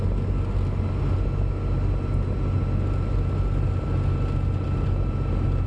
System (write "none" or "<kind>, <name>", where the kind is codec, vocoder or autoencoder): none